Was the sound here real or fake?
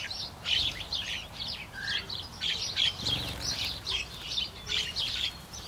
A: fake